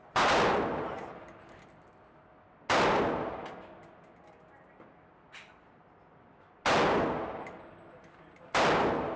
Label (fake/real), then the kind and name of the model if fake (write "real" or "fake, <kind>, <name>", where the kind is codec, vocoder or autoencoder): real